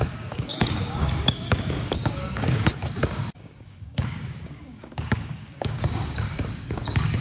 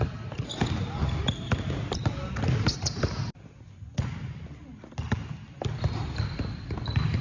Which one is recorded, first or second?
second